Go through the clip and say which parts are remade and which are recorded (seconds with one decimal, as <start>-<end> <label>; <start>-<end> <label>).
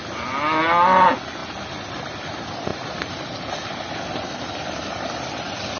0.0-5.8 recorded